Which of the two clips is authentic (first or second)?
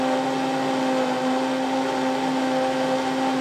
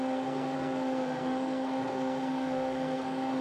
first